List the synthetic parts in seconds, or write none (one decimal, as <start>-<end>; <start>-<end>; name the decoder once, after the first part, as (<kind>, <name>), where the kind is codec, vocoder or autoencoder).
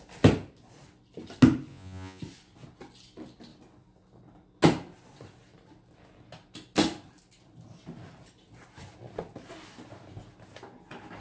1.7-2.2 (vocoder, Vocos)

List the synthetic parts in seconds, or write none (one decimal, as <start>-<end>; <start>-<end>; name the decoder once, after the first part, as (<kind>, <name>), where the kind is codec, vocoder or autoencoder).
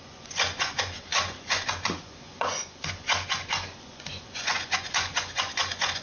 0.0-6.0 (vocoder, Vocos)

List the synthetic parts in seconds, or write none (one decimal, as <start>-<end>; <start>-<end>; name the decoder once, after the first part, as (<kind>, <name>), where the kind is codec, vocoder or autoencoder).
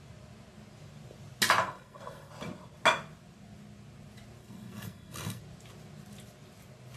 1.6-2.3 (codec, SNAC); 4.4-5.4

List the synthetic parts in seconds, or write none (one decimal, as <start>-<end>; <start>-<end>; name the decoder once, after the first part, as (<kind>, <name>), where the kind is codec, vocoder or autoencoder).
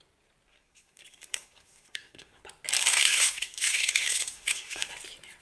0.5-2.4 (codec, SNAC); 2.9-4.9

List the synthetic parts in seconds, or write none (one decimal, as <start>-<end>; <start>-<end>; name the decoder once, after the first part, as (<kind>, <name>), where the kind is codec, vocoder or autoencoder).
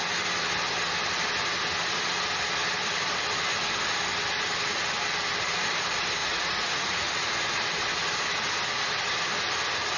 6.2-7.0 (vocoder, Vocos)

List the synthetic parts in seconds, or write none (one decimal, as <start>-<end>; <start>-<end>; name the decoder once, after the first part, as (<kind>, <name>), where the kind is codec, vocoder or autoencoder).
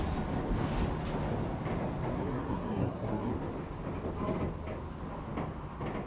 2.1-3.3 (codec, SNAC)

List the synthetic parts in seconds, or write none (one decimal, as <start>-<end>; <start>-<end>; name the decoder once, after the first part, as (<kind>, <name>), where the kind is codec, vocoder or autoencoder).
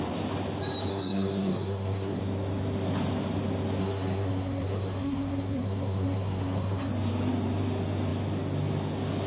0.9-2.2 (codec, SNAC); 3.8-6.9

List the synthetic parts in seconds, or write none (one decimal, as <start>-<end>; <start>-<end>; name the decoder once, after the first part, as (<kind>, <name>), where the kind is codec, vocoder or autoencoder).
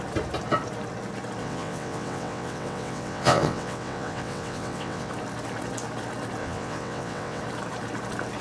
1.4-5.1 (vocoder, WaveNeXt); 6.4-7.4